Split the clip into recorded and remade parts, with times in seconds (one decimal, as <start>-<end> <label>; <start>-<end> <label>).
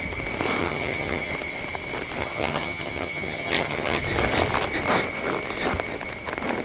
0.0-0.6 recorded; 0.6-1.3 remade; 1.3-2.2 recorded; 2.2-4.0 remade; 4.0-6.6 recorded